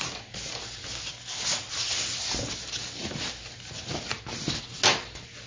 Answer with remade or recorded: recorded